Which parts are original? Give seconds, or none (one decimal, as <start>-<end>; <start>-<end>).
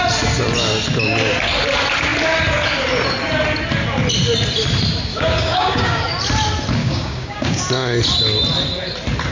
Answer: 0.0-5.1; 6.0-6.8; 7.6-9.3